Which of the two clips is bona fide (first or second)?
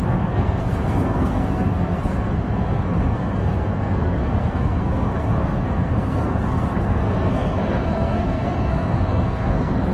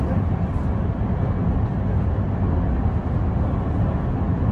second